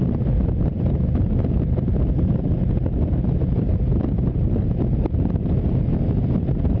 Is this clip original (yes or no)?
yes